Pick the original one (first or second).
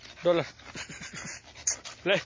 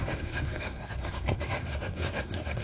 first